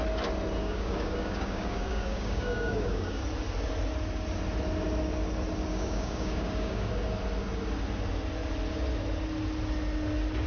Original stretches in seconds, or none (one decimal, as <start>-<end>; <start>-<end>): 0.0-0.6; 3.2-5.7; 6.9-10.5

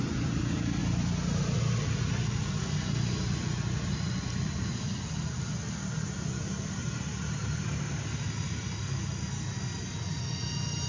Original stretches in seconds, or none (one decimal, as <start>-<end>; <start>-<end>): 0.0-10.9

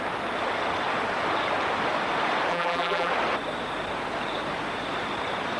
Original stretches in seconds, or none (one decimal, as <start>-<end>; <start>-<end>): 0.0-2.5; 3.1-5.6

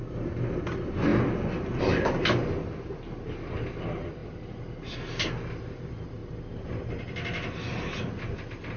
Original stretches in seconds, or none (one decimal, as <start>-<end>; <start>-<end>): 0.0-6.2; 6.7-8.8

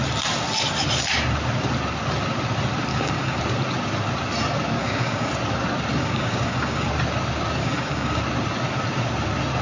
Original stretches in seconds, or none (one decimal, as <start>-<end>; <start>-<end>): 0.0-2.9; 3.4-4.8; 5.3-6.0; 6.9-7.6; 8.2-9.6